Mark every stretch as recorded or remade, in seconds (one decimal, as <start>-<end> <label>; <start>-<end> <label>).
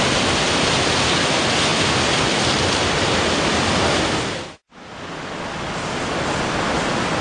0.0-7.2 recorded